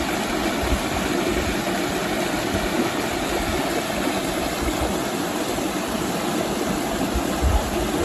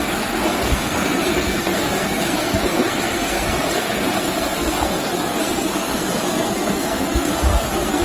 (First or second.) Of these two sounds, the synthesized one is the second